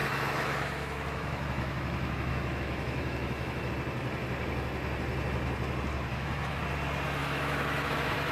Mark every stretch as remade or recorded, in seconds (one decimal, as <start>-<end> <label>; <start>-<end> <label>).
0.0-3.7 remade; 3.7-6.1 recorded; 6.1-6.6 remade; 6.6-7.2 recorded; 7.2-8.3 remade